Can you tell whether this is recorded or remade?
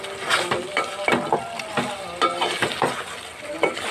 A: recorded